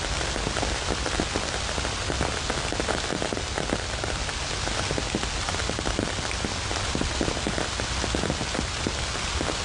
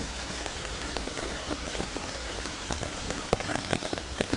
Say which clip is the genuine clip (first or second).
first